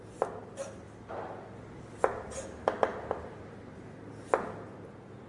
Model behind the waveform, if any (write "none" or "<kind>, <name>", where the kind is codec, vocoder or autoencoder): none